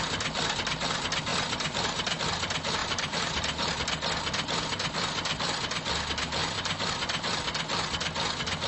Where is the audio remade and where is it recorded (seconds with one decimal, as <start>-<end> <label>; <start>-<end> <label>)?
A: 0.0-1.3 recorded; 1.3-2.2 remade; 2.2-2.8 recorded; 2.8-3.7 remade; 3.7-6.4 recorded; 6.4-6.9 remade; 6.9-8.7 recorded